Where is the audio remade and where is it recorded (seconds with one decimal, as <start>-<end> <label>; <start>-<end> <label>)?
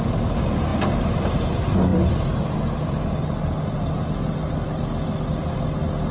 0.0-6.1 recorded